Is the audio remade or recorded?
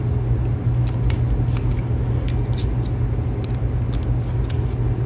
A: recorded